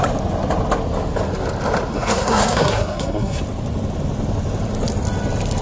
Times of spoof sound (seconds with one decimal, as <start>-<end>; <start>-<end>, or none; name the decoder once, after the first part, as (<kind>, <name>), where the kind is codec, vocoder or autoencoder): 1.9-3.4 (codec, SNAC)